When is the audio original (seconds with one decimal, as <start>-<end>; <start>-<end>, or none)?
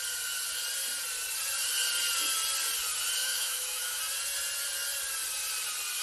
0.0-3.2; 4.0-6.0